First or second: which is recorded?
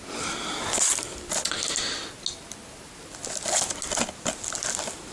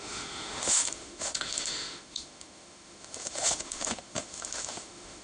first